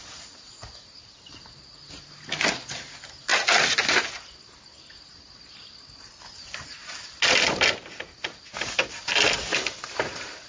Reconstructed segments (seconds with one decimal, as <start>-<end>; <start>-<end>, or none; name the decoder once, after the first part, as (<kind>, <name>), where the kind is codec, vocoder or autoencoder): none